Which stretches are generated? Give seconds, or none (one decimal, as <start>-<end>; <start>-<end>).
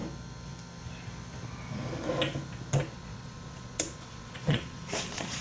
2.9-5.4